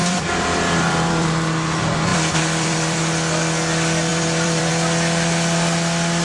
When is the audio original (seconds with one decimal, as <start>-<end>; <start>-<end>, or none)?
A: 1.5-2.1; 3.0-4.1; 4.7-6.2